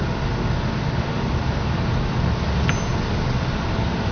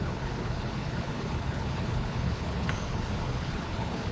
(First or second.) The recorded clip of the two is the first